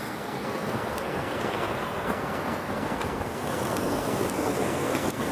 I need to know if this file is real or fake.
fake